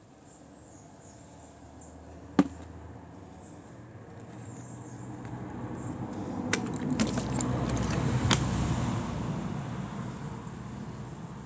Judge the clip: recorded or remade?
recorded